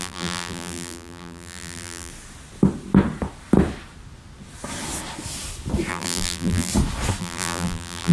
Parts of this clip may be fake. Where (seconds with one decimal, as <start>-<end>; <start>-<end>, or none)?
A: 0.0-2.1; 5.9-6.7; 7.2-8.1